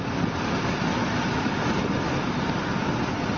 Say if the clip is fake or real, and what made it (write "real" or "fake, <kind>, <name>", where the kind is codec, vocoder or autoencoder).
real